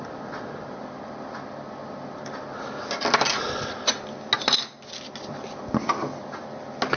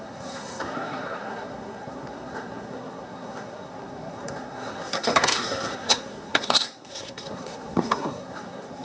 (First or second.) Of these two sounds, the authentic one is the first